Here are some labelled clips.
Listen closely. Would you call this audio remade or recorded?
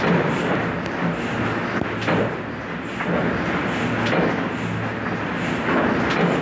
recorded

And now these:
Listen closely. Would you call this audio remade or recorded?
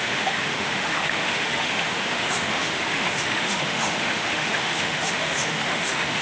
remade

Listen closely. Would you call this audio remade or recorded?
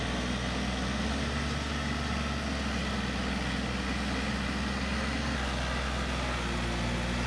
recorded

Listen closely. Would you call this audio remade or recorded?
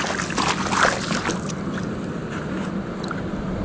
recorded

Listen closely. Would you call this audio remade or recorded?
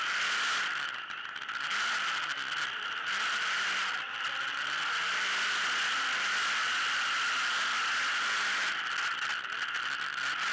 recorded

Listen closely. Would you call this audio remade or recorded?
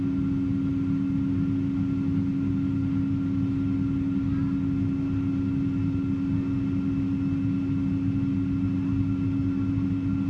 recorded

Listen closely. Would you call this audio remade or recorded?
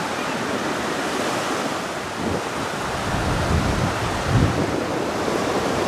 recorded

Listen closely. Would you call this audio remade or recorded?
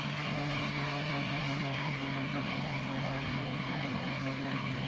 remade